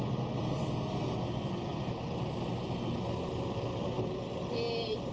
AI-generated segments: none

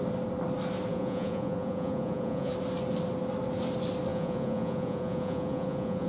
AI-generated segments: 0.9-2.5 (vocoder, Vocos); 4.1-6.1